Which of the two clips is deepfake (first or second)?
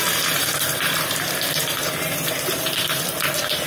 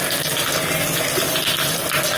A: first